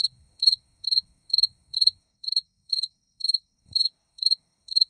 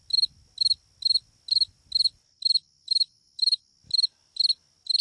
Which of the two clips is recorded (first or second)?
second